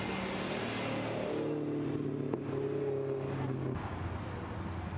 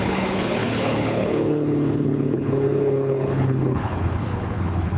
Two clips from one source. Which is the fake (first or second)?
second